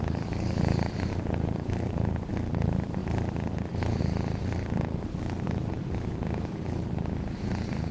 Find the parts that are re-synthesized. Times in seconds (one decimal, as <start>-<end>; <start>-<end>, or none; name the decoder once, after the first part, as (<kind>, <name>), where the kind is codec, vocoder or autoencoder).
0.0-0.6 (codec, DAC); 1.1-2.3; 5.1-5.7